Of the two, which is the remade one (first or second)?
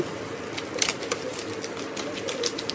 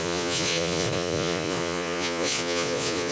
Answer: second